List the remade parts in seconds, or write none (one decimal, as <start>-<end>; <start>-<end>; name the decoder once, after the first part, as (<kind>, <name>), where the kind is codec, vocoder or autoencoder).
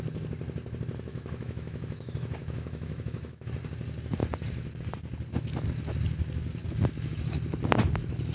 1.1-3.5 (autoencoder, DAC-VAE)